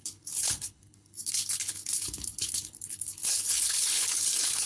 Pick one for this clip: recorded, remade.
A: remade